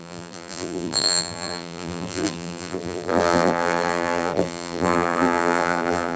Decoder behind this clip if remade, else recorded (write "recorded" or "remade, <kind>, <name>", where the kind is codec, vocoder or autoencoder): remade, vocoder, BigVGAN v2